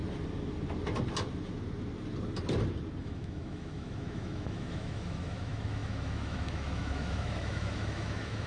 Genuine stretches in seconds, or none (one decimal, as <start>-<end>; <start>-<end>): 0.0-3.0